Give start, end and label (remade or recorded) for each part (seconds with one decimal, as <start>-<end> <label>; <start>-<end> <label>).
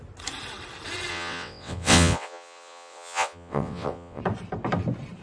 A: 0.0-1.1 recorded; 1.1-4.2 remade; 4.2-5.2 recorded